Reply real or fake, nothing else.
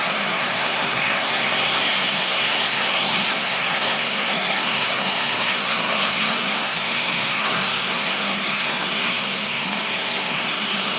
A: fake